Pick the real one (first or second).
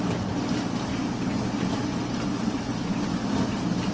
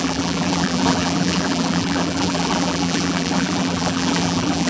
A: first